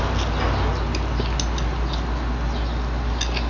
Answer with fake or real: real